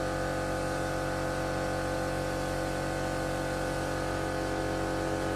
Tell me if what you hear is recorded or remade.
recorded